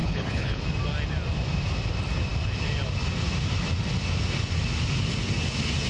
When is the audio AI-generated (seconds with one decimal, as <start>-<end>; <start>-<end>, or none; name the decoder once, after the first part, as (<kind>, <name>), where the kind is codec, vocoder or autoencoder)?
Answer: 0.0-0.6 (codec, HILCodec)